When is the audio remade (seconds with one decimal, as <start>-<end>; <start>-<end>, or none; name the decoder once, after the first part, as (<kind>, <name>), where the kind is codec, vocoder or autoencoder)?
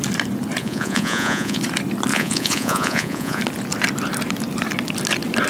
0.6-1.6 (vocoder, Vocos); 2.1-3.4